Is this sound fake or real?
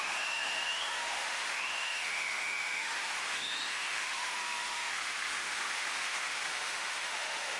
fake